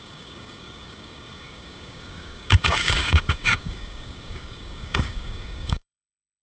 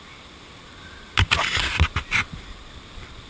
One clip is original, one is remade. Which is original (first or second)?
second